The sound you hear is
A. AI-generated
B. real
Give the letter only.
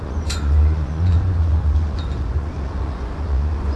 A